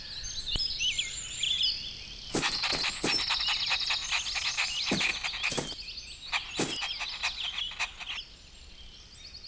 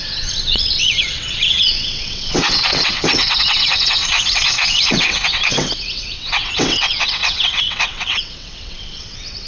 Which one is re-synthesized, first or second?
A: second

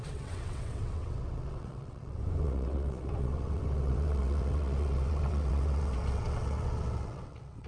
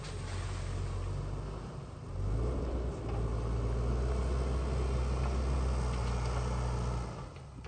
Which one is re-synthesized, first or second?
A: first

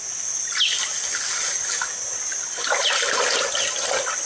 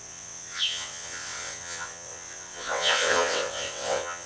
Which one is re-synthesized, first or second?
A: second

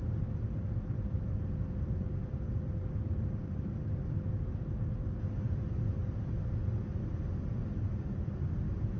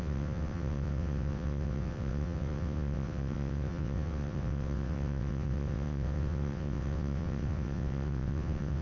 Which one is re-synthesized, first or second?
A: second